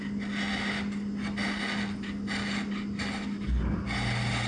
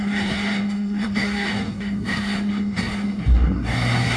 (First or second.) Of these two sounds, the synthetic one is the second